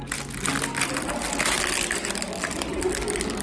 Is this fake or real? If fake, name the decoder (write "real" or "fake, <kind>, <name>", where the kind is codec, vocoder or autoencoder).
real